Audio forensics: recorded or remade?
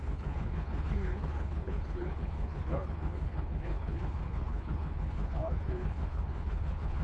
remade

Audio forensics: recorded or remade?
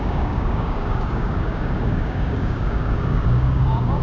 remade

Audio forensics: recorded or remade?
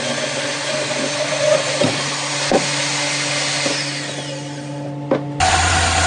recorded